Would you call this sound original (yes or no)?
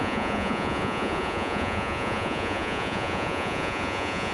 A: no